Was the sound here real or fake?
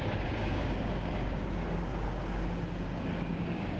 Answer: fake